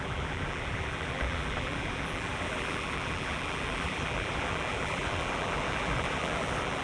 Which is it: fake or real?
fake